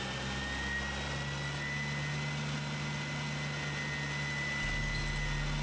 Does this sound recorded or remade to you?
recorded